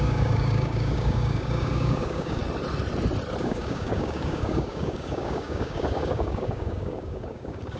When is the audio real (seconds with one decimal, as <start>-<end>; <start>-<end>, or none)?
2.4-3.4